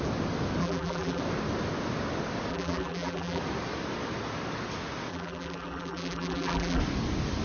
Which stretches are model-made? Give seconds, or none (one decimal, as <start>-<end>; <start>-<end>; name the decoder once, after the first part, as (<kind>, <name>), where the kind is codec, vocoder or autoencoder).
0.6-1.2 (vocoder, BigVGAN v2); 2.5-3.4; 5.1-6.8